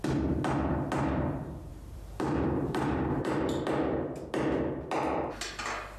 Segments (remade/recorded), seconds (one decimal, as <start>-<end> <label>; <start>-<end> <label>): 0.0-1.7 recorded; 1.7-3.4 remade; 3.4-6.0 recorded